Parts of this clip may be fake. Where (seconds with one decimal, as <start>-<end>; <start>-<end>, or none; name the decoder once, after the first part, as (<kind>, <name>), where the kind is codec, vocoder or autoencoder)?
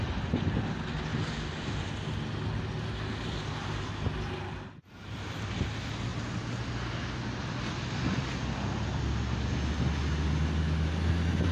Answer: 6.1-9.5 (vocoder, BigVGAN v2)